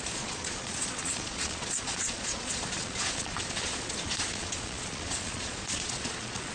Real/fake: fake